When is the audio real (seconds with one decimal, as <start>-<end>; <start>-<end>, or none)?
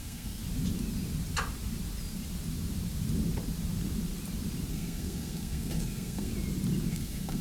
0.4-4.7; 6.3-6.9